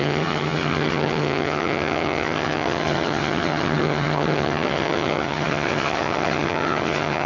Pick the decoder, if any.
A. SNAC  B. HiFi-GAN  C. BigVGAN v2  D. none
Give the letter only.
B